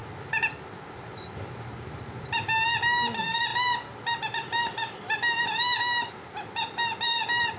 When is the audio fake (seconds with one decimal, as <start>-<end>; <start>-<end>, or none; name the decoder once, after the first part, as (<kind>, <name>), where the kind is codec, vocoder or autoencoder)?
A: none